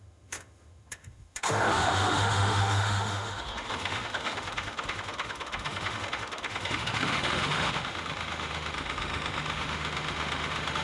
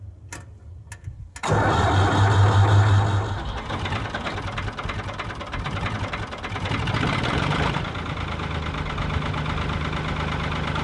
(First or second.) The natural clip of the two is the second